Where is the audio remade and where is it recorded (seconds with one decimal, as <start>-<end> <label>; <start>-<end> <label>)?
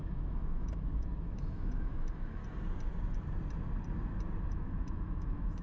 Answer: 0.0-2.4 remade; 2.4-4.4 recorded; 4.4-5.6 remade